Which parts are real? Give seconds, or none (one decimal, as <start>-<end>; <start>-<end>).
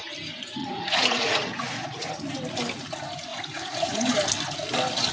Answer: 0.0-0.6; 2.1-3.3; 4.1-5.1